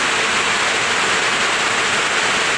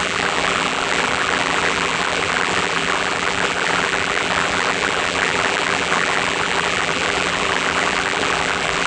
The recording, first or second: first